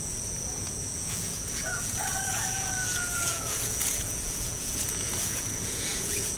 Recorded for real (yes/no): no